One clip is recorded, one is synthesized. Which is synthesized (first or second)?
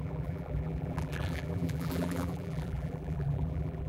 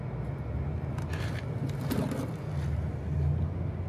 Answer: first